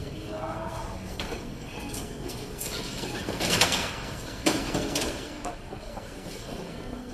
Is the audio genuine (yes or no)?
no